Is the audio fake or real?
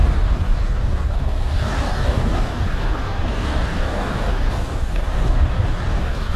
fake